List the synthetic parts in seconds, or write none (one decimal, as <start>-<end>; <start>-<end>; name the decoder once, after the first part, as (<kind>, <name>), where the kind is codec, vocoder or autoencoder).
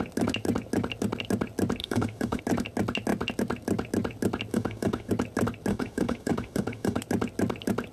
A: 1.8-2.4 (autoencoder, DAC-VAE); 4.5-5.1; 5.7-7.0